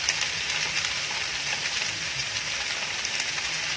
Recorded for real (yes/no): yes